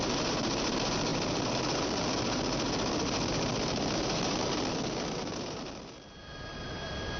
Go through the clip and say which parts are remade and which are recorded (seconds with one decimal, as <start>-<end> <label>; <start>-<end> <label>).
0.0-7.2 recorded